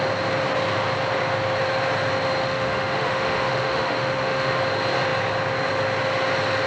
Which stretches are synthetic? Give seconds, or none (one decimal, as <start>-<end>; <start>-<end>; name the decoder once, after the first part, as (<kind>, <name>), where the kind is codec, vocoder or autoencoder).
2.4-4.6 (autoencoder, DAC-VAE)